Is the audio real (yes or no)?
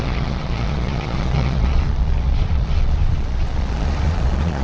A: no